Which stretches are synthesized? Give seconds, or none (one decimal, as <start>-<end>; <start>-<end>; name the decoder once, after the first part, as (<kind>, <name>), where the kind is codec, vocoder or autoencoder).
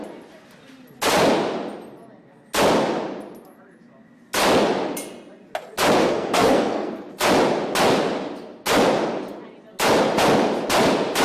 6.0-7.1 (codec, SNAC)